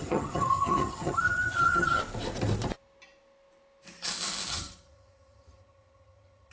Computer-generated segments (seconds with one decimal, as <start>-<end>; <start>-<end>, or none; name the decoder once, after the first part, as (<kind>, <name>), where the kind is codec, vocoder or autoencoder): 0.0-2.0 (vocoder, HiFi-GAN); 4.5-6.5